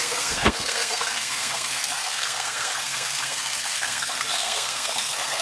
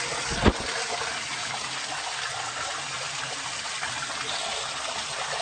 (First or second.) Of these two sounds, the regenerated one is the first